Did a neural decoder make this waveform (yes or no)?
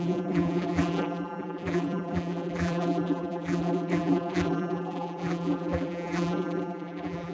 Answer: yes